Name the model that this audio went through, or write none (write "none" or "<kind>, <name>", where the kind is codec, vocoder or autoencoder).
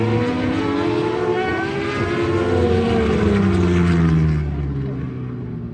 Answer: none